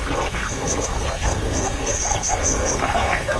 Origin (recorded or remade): remade